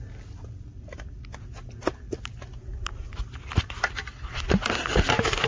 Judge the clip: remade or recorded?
recorded